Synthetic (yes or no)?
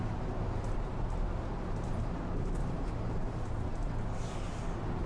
no